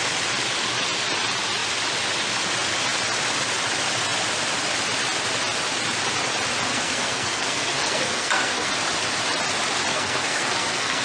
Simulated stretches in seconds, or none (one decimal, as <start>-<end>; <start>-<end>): 6.7-8.7; 9.9-11.0